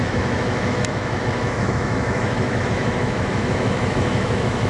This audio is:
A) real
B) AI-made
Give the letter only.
B